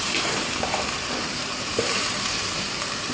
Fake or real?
fake